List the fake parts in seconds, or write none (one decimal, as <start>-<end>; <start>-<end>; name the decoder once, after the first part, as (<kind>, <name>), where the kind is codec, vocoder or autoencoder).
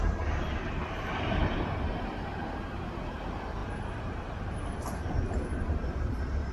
0.0-6.5 (vocoder, BigVGAN v2)